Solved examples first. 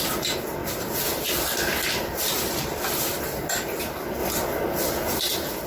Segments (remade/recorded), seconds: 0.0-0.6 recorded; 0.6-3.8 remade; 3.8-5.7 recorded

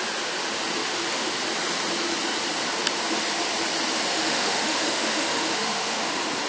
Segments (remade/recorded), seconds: 0.0-0.8 recorded; 0.8-1.4 remade; 1.4-4.1 recorded; 4.1-6.1 remade; 6.1-6.5 recorded

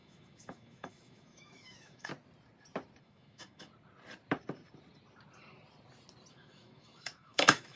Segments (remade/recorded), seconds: 0.0-2.1 remade; 2.1-3.0 recorded; 3.0-3.7 remade; 3.7-6.3 recorded; 6.3-7.8 remade

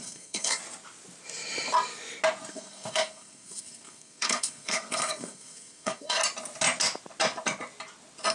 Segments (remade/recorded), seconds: 0.0-0.6 remade; 0.6-2.5 recorded; 2.5-6.2 remade; 6.2-8.3 recorded

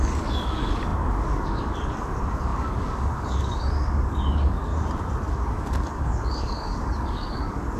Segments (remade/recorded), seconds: 0.0-4.7 remade; 4.7-5.3 recorded; 5.3-7.8 remade

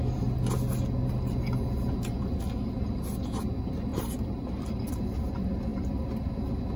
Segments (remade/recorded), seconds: 0.0-6.8 recorded

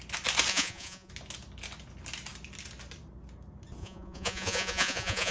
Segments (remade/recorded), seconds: 0.0-0.5 recorded; 0.5-1.1 remade; 1.1-3.8 recorded; 3.8-5.3 remade

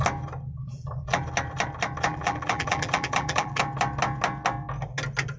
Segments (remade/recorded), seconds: 0.0-0.6 recorded; 0.6-1.2 remade; 1.2-2.1 recorded; 2.1-3.6 remade; 3.6-5.4 recorded